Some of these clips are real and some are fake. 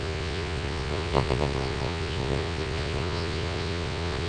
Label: fake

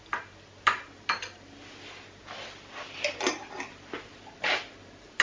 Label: real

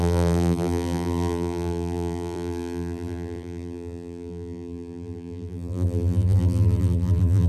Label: fake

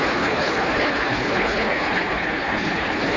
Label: fake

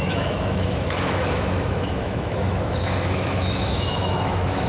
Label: fake